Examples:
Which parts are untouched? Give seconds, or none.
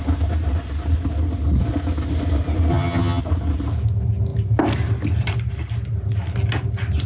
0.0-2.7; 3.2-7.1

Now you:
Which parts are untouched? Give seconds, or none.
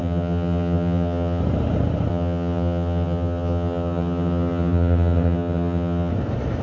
1.4-2.1; 6.1-6.6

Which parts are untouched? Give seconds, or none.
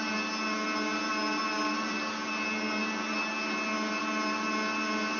0.0-5.2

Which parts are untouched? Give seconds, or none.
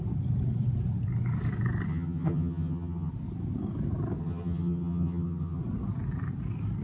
0.0-1.9; 3.1-4.2; 5.6-6.8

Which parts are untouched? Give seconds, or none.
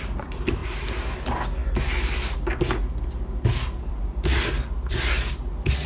0.0-5.9